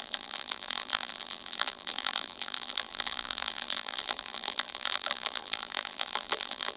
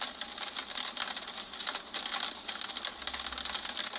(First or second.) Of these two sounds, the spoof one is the first